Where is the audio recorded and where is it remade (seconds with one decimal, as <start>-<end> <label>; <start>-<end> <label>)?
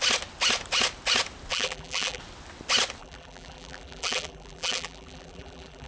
0.0-1.5 recorded; 1.5-2.2 remade; 2.2-3.0 recorded; 3.0-5.9 remade